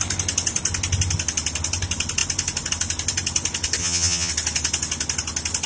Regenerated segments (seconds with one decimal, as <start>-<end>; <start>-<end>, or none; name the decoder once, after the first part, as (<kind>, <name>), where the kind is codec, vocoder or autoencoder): 3.8-4.3 (vocoder, HiFi-GAN)